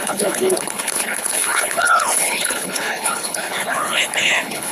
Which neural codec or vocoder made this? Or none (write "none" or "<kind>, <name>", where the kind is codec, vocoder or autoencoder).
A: codec, HILCodec